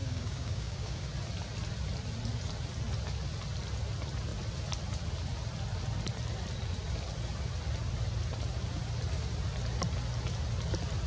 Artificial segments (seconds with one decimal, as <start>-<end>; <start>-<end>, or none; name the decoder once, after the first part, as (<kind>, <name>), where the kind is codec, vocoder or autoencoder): 0.0-1.1 (codec, DAC)